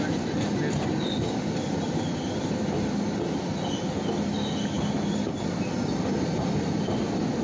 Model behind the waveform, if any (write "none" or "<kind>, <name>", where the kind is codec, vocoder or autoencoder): none